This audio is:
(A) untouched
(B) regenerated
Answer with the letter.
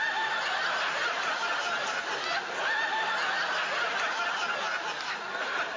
A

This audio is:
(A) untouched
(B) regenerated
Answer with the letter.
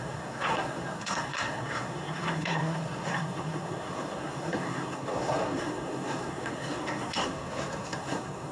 B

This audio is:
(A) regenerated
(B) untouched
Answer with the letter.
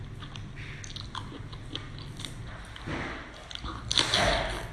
B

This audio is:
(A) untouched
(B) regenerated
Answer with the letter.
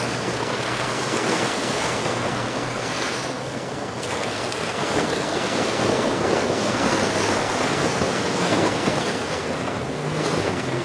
B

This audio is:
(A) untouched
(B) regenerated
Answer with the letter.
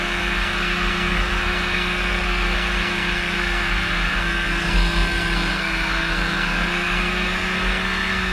B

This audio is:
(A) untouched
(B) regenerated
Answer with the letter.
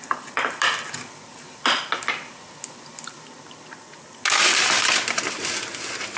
A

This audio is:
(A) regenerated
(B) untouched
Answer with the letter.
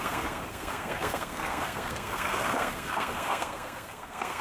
A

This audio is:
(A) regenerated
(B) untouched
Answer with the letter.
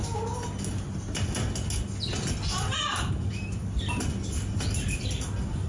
B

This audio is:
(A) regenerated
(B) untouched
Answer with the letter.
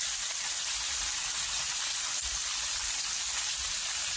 B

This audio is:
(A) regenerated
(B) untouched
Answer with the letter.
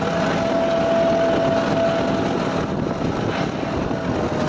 B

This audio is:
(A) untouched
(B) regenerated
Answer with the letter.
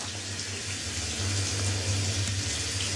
A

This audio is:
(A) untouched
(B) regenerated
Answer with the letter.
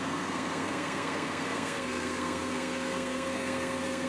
B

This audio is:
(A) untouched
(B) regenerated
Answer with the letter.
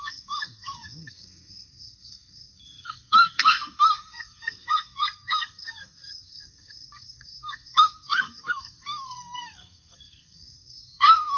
B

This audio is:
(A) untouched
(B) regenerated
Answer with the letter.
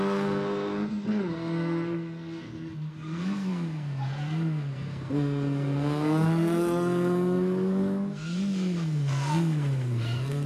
B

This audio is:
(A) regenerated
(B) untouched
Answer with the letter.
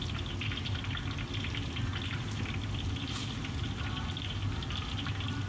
B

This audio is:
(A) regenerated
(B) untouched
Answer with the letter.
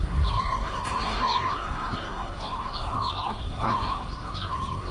A